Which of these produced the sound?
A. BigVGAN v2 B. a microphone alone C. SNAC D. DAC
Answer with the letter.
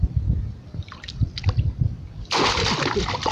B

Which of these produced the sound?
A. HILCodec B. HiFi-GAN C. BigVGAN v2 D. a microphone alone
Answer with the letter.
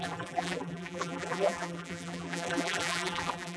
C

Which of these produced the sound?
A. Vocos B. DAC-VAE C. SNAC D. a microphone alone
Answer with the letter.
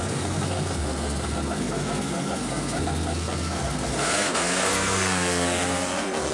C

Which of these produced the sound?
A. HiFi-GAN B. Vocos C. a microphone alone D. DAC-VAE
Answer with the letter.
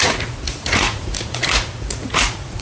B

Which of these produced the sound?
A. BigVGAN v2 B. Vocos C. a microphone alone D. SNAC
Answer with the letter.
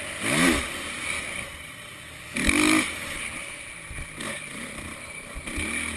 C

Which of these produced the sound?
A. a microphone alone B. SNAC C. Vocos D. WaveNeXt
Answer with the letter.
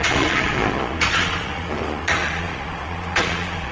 C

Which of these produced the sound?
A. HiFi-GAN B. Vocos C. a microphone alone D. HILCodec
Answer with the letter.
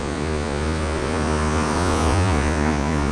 B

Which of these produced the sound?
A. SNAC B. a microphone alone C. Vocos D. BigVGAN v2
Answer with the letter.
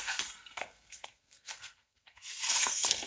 A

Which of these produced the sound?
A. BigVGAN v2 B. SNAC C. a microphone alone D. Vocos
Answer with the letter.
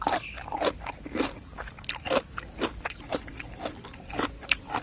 A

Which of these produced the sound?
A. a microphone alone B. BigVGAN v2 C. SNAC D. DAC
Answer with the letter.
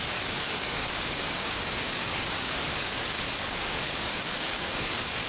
D